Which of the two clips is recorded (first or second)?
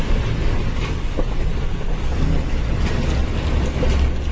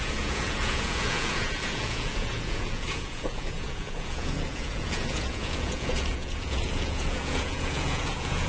first